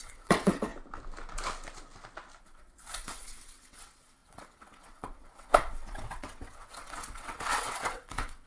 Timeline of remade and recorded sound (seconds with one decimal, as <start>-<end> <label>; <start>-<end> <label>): 0.0-0.7 remade; 0.7-2.4 recorded; 2.4-8.5 remade